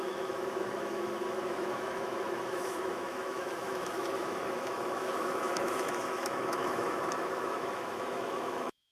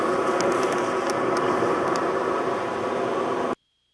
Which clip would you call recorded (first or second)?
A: second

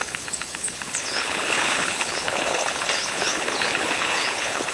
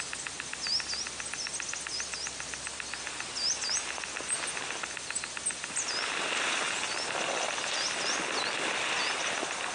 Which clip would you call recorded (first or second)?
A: second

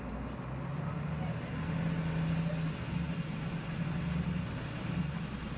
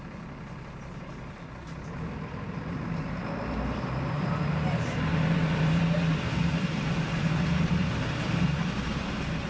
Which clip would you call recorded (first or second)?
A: first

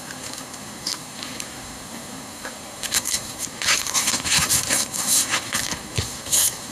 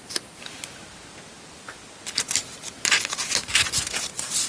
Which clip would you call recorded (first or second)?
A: second